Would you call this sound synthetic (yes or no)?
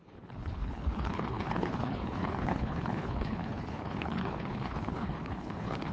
yes